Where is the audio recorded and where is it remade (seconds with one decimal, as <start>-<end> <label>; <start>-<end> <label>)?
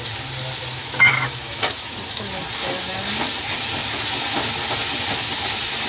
0.0-0.8 recorded; 0.8-2.4 remade; 2.4-5.9 recorded